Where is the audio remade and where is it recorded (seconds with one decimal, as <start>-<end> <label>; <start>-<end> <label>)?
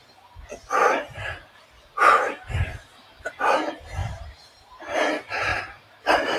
0.0-2.9 recorded; 2.9-3.4 remade; 3.4-4.0 recorded; 4.0-5.1 remade; 5.1-5.5 recorded; 5.5-6.4 remade